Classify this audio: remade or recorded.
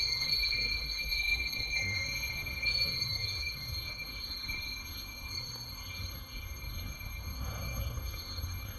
remade